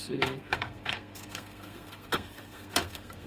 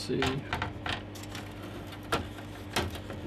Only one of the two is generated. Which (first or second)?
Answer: first